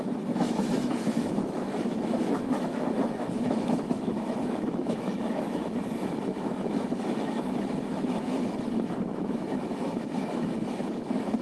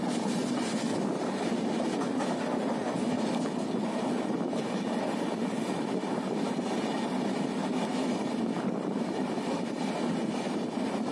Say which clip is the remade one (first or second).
first